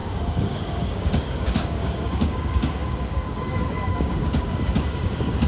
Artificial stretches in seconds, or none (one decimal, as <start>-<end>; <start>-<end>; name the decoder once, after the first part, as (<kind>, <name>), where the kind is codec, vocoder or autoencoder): 0.0-5.5 (codec, DAC)